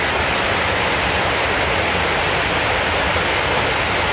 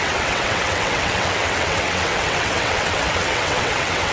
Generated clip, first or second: second